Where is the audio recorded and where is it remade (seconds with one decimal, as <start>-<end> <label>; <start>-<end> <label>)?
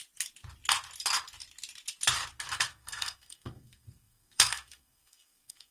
0.0-2.7 recorded; 2.7-5.7 remade